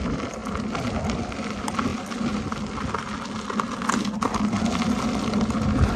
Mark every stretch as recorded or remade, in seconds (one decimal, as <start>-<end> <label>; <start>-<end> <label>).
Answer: 0.0-6.0 recorded